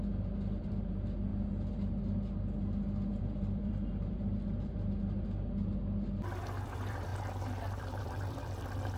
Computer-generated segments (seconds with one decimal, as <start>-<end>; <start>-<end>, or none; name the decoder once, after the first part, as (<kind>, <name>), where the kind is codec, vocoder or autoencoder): 0.0-1.3 (vocoder, BigVGAN v2); 3.2-9.0